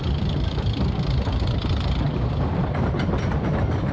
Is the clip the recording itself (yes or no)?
no